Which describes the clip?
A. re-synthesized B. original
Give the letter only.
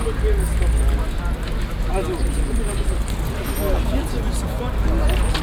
B